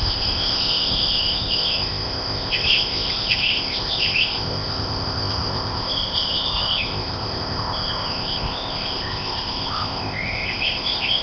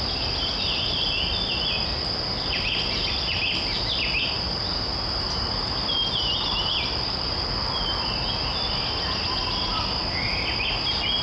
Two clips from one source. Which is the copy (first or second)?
first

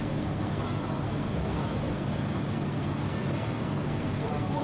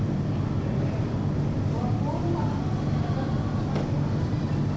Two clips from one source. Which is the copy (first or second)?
first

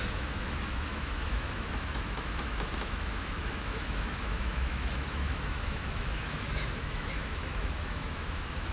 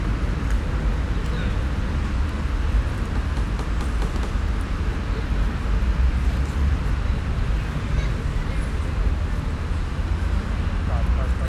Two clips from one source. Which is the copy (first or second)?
first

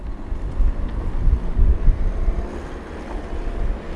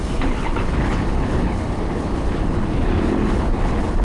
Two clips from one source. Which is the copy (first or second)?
second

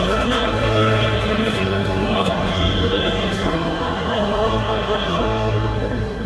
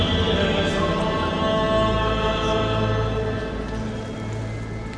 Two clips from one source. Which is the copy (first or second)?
first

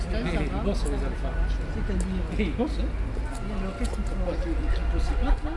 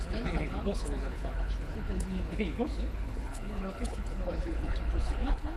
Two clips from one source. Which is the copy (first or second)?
second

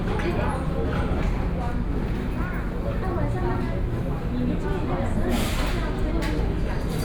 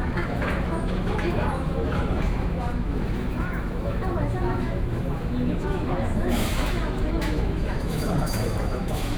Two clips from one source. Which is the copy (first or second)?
second